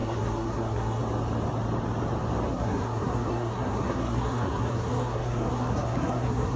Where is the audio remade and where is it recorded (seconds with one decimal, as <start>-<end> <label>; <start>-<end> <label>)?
0.0-1.0 remade; 1.0-2.5 recorded; 2.5-6.6 remade